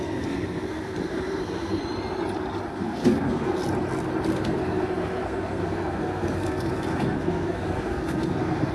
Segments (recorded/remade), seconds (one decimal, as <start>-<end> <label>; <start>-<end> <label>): 0.0-1.8 remade; 1.8-2.7 recorded; 2.7-3.6 remade; 3.6-4.3 recorded; 4.3-8.7 remade